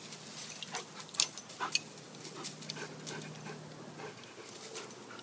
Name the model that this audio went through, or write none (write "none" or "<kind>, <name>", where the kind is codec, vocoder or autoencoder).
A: none